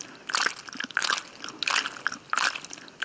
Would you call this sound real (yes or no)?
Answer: yes